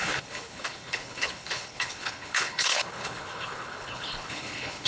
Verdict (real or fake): fake